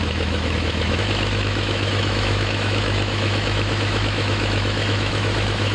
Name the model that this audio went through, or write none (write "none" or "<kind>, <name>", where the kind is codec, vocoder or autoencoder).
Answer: autoencoder, DAC-VAE